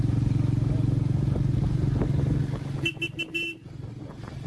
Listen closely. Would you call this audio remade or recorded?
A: recorded